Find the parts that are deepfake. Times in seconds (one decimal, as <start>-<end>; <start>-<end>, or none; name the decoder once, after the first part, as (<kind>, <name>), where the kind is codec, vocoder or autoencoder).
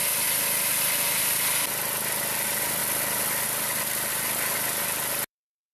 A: none